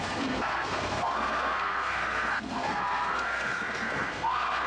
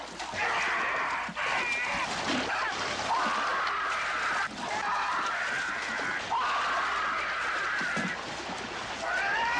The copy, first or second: first